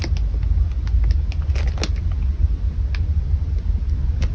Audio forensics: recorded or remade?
recorded